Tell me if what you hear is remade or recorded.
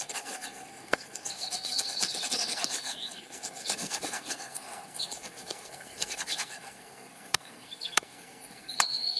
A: remade